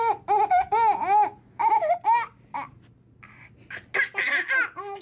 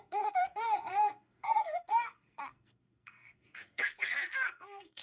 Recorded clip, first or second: first